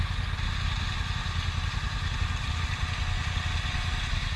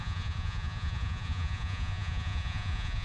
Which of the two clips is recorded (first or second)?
first